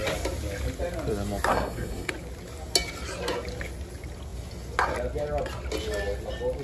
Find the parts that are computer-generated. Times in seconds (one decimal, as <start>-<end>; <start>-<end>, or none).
1.5-2.1